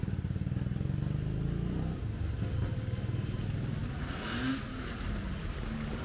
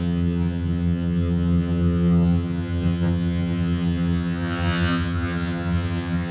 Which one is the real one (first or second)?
first